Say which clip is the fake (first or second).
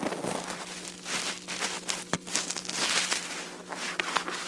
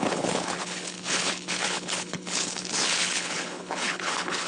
second